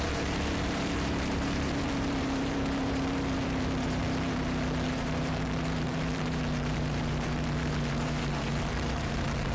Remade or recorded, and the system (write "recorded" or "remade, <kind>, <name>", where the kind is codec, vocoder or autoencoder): remade, vocoder, BigVGAN v2